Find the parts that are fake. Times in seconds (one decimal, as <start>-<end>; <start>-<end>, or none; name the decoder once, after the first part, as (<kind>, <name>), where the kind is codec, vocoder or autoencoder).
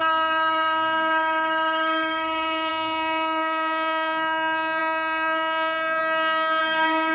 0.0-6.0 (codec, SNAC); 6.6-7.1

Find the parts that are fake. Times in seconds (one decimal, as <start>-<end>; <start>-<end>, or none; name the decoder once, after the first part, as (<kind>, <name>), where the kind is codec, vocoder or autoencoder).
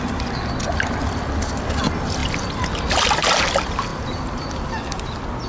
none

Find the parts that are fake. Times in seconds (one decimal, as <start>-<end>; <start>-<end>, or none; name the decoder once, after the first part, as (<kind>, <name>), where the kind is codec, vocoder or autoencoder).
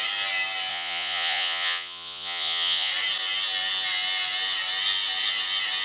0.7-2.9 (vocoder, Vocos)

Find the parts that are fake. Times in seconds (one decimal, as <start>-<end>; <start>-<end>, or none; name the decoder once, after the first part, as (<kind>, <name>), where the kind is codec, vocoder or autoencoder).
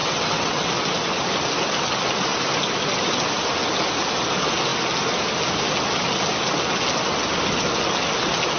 0.0-0.7 (vocoder, WaveNeXt)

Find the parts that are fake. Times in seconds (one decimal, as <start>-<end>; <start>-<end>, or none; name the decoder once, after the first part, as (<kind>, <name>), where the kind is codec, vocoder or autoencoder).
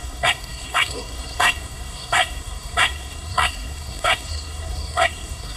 0.0-5.6 (codec, SNAC)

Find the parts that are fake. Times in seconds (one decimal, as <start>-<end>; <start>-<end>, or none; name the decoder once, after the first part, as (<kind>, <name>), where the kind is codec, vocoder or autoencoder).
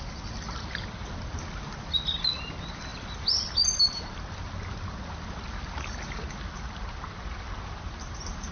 none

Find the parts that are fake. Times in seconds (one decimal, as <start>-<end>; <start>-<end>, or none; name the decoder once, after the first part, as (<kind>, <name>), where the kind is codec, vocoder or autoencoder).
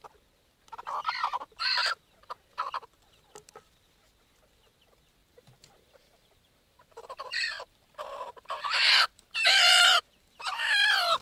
5.2-10.0 (vocoder, BigVGAN v2)